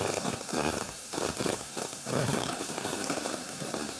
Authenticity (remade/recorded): remade